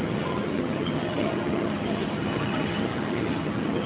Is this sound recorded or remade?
remade